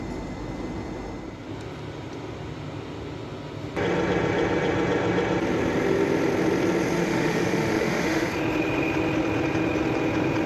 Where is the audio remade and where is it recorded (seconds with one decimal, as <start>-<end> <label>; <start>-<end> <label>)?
0.0-7.0 recorded; 7.0-8.3 remade; 8.3-10.5 recorded